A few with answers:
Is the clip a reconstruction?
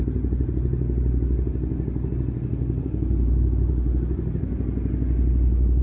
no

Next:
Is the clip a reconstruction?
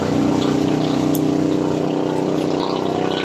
no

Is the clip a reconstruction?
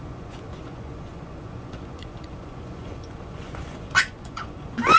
yes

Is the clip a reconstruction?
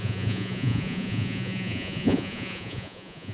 yes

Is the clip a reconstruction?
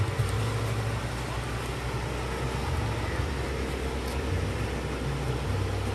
no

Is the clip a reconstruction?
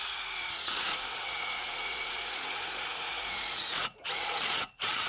yes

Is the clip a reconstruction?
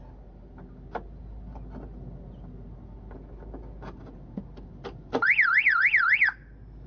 no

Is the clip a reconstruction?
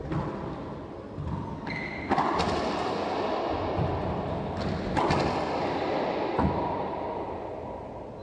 no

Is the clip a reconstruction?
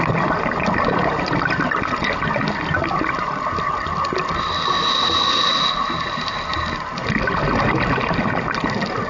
no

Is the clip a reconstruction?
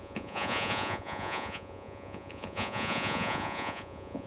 yes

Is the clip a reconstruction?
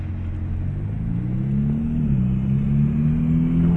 no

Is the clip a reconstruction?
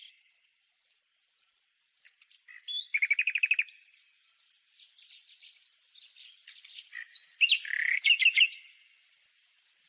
no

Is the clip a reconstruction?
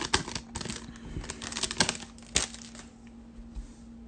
no